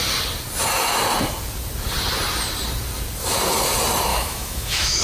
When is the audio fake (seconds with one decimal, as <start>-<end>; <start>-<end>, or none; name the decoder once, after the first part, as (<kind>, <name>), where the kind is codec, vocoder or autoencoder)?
4.1-5.0 (autoencoder, DAC-VAE)